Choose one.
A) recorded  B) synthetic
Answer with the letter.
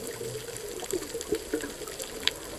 A